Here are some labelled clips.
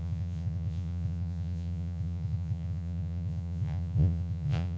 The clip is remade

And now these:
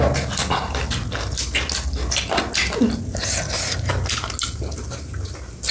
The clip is recorded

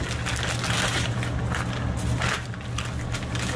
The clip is recorded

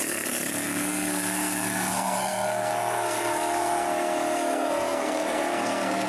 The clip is remade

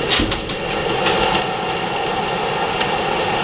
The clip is recorded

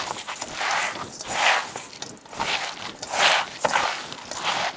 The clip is recorded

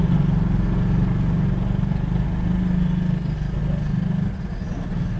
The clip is recorded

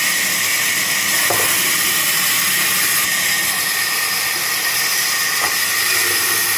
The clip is recorded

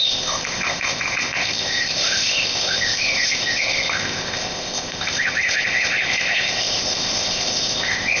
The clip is remade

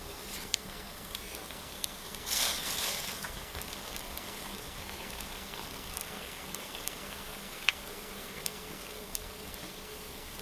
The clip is remade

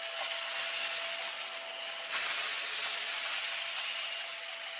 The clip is recorded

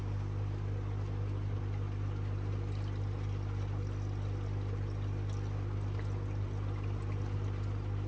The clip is recorded